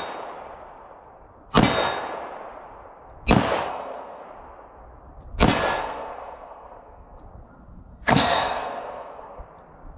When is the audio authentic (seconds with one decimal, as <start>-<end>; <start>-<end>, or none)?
0.0-3.7; 4.2-5.8; 7.2-7.9; 9.4-10.0